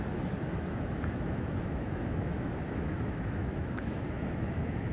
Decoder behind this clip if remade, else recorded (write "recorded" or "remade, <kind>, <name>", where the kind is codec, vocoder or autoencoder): remade, autoencoder, DAC-VAE